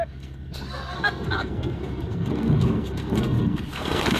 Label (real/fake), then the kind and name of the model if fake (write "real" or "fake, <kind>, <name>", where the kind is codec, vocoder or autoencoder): fake, codec, SNAC